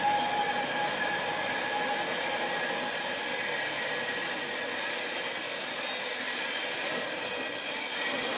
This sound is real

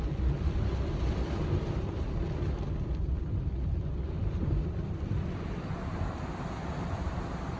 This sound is fake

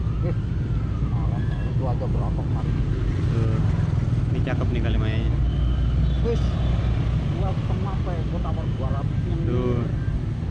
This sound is real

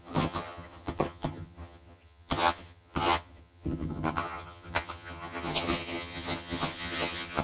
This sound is fake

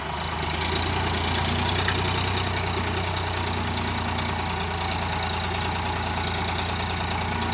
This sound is real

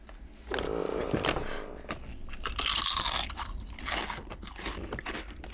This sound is real